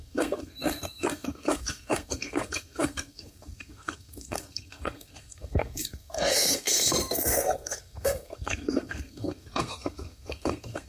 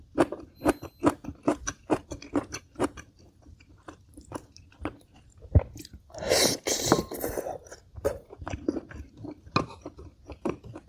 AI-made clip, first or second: first